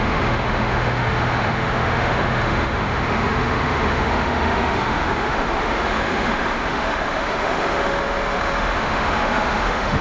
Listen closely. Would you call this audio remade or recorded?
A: remade